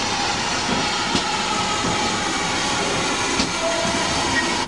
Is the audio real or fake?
real